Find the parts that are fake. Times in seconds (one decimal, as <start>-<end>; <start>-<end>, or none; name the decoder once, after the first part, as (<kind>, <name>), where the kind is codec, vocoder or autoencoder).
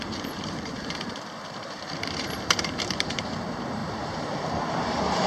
0.0-5.3 (vocoder, BigVGAN v2)